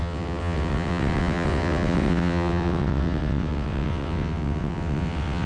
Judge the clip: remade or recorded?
remade